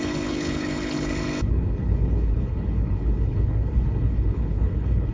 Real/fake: fake